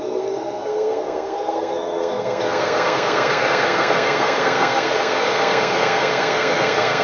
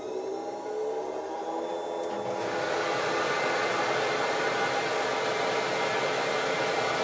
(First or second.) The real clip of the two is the second